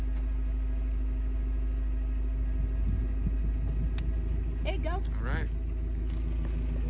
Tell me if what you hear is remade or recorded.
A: recorded